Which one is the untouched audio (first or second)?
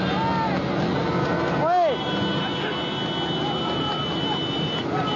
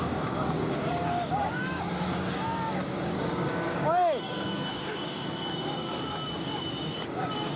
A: first